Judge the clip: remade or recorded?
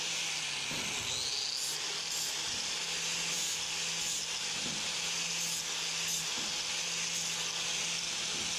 recorded